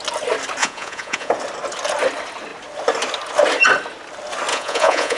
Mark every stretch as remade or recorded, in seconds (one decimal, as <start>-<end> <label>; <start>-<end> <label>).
0.0-0.6 recorded; 0.6-1.3 remade; 1.3-4.5 recorded; 4.5-5.2 remade